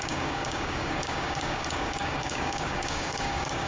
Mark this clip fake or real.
fake